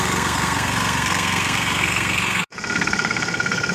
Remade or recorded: remade